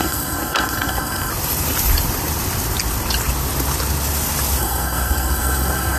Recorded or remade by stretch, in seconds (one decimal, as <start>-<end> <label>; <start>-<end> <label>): 0.0-1.3 remade; 1.3-4.6 recorded; 4.6-6.0 remade